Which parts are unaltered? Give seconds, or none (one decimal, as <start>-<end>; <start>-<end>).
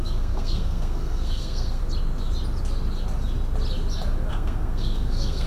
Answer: 1.8-4.3